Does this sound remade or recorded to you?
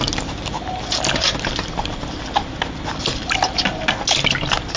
recorded